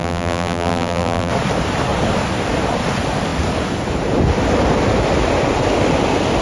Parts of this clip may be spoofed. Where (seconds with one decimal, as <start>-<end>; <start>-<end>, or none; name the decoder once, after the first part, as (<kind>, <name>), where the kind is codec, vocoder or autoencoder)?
0.0-1.3 (vocoder, BigVGAN v2)